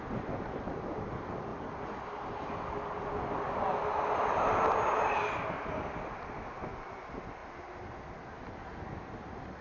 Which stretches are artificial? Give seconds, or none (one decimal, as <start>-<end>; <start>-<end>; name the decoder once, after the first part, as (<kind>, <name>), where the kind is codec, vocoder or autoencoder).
none